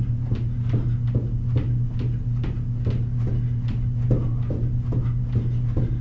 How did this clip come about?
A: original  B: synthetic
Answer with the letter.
A